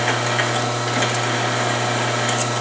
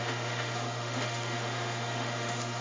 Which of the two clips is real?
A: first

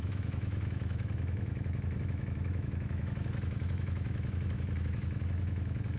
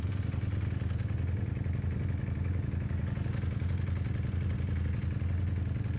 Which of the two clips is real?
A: second